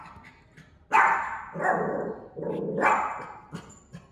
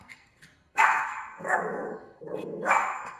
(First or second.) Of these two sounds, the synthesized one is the second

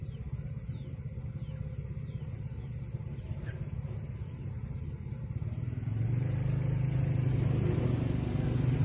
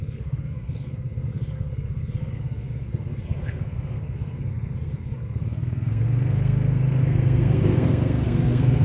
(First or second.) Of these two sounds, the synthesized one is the second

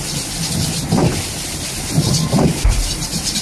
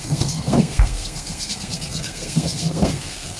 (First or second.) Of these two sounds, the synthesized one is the second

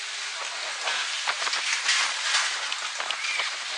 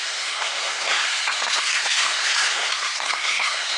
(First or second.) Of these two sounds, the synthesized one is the second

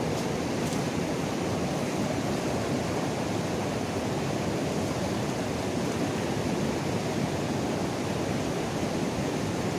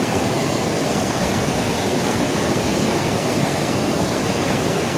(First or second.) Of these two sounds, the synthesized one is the second